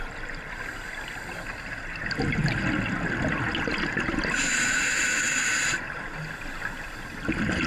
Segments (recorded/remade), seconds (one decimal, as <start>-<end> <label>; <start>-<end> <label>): 0.0-7.7 recorded